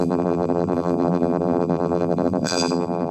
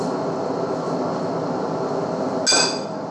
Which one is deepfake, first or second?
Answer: first